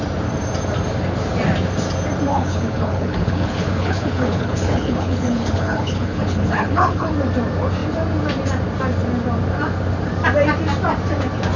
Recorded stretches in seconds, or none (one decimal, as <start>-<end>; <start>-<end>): 0.0-2.3; 7.1-11.6

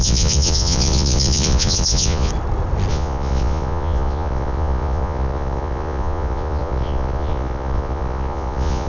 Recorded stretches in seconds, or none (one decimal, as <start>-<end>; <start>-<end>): 2.3-2.9

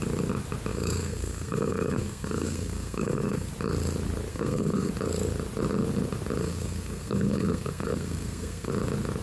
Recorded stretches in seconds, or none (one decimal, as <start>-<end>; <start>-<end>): 0.0-0.7; 3.5-4.3; 4.9-6.4; 8.7-9.2